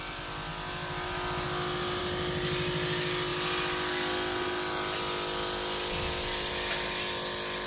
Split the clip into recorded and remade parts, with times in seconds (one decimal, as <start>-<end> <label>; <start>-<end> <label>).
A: 0.0-7.7 recorded